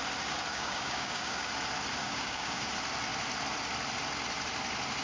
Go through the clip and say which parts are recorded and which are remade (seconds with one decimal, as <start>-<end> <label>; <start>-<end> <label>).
0.0-0.5 recorded; 0.5-1.5 remade; 1.5-2.0 recorded; 2.0-2.7 remade; 2.7-5.0 recorded